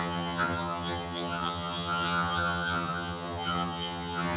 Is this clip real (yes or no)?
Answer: no